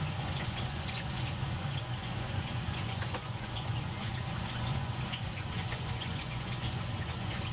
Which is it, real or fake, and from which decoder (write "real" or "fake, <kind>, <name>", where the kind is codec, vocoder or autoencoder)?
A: fake, vocoder, Vocos